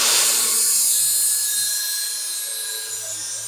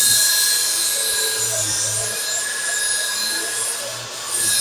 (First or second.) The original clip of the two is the first